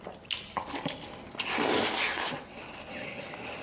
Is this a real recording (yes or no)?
yes